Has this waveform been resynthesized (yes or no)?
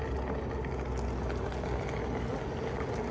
no